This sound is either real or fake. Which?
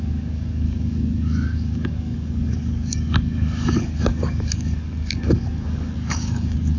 fake